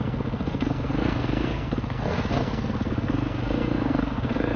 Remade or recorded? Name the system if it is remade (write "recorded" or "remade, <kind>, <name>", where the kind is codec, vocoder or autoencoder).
remade, codec, SNAC